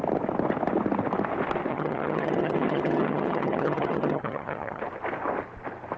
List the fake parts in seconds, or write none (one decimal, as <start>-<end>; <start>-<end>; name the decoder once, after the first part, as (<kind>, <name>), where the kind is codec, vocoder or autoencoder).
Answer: 1.7-4.8 (vocoder, HiFi-GAN)